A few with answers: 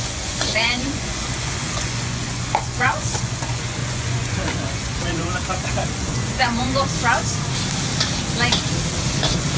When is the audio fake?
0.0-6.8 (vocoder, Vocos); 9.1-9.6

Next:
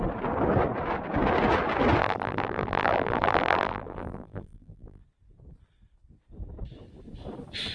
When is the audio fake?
2.0-5.0 (vocoder, BigVGAN v2)

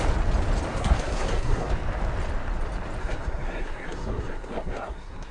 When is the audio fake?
0.7-1.7 (codec, SNAC); 3.0-5.3